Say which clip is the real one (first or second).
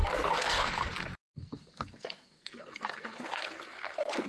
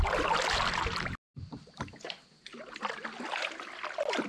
second